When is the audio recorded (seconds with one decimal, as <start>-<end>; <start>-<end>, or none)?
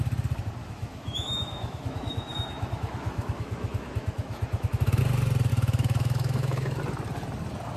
0.0-0.6; 5.0-5.5; 6.8-7.8